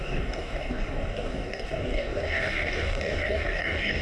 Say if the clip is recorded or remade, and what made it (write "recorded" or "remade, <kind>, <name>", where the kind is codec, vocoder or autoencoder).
remade, codec, DAC